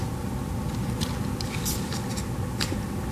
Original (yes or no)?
yes